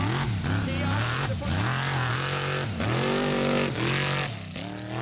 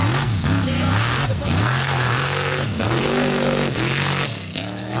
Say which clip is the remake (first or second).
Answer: second